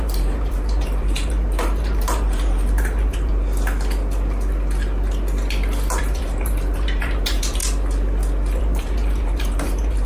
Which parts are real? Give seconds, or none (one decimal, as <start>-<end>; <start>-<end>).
3.3-6.0; 7.6-8.6